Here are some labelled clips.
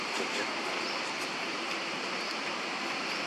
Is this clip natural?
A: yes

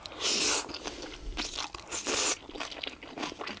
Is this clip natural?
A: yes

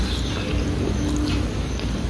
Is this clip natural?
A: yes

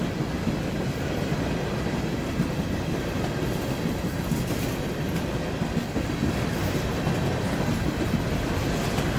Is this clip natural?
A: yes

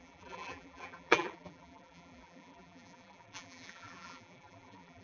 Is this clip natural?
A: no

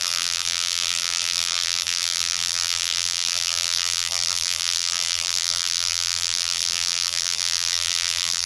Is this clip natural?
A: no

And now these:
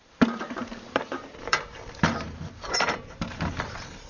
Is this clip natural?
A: no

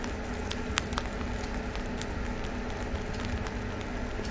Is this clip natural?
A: yes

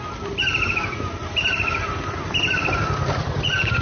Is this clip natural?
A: no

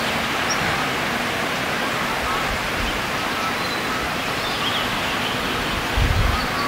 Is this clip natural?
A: yes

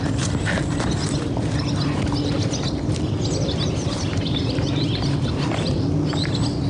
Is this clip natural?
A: no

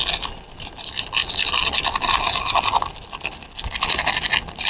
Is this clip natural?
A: yes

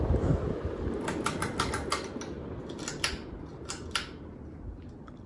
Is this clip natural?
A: yes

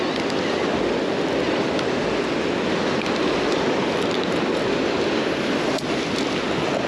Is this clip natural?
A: yes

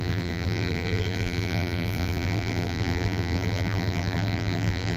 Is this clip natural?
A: no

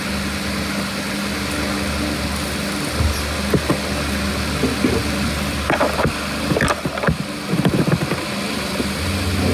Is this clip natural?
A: yes